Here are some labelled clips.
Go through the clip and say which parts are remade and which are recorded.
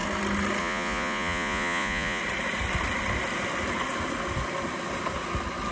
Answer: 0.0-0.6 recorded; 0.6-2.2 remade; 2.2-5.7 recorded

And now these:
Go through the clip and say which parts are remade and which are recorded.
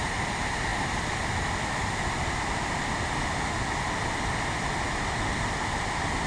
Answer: 0.0-6.3 recorded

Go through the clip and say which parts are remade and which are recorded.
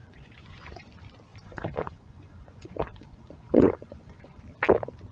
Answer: 0.0-0.9 remade; 0.9-1.3 recorded; 1.3-4.4 remade; 4.4-5.1 recorded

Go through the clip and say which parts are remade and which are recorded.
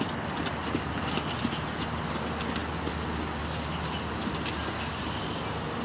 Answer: 0.0-5.8 recorded